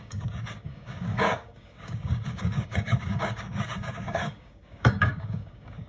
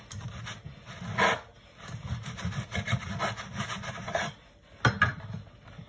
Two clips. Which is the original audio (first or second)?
second